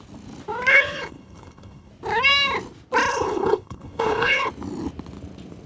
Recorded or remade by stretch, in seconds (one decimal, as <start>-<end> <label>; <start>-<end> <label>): 0.0-0.7 recorded; 0.7-1.9 remade; 1.9-3.1 recorded; 3.1-4.5 remade; 4.5-5.7 recorded